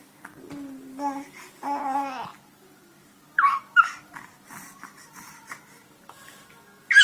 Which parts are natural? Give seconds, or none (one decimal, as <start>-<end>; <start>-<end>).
0.0-2.3; 6.5-7.0